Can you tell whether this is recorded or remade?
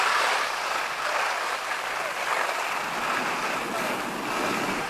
recorded